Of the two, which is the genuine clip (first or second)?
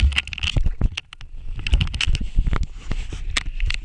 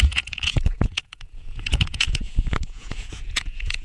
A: first